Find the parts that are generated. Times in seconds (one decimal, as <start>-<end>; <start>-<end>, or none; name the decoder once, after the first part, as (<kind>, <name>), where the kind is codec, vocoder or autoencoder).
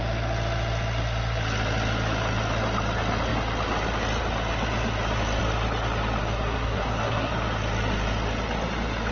6.2-7.3 (codec, SNAC)